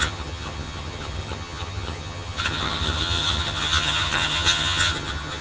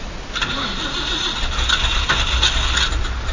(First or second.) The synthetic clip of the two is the first